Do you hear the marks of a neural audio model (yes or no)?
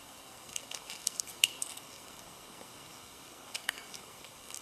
yes